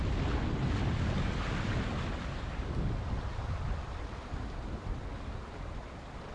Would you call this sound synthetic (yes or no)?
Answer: no